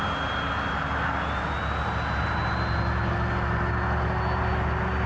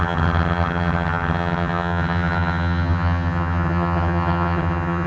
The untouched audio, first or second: first